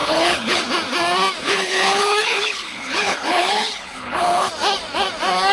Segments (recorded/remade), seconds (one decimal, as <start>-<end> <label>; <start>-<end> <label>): 0.0-0.6 remade; 0.6-1.4 recorded; 1.4-4.5 remade; 4.5-5.5 recorded